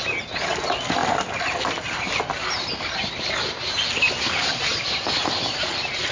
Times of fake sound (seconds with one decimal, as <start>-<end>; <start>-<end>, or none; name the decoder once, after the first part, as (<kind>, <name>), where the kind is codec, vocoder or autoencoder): none